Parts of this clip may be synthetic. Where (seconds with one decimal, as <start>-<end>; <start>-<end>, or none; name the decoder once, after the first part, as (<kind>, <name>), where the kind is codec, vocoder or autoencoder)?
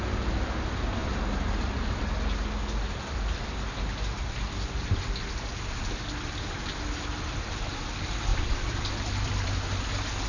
8.3-9.5 (vocoder, BigVGAN v2)